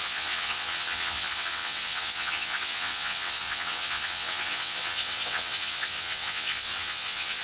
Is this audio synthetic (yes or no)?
yes